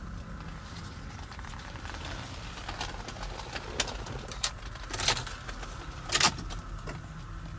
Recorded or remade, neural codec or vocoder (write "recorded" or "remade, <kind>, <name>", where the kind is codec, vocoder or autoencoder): recorded